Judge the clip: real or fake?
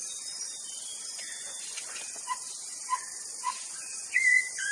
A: fake